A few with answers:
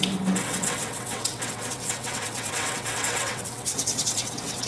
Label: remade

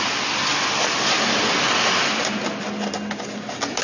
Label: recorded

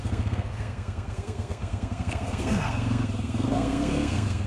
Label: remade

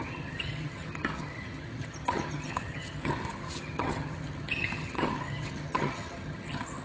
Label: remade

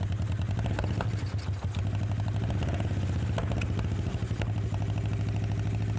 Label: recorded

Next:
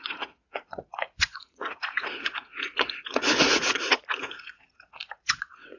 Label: remade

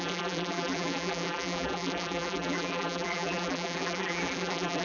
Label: remade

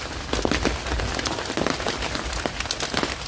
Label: recorded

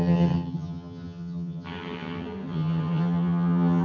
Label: remade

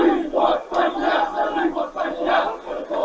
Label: recorded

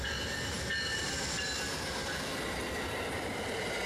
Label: recorded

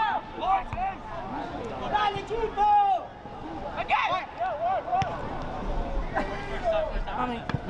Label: recorded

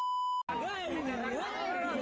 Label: recorded